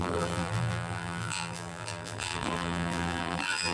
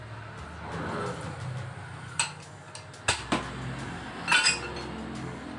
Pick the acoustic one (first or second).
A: second